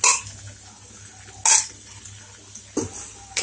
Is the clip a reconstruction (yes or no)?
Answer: no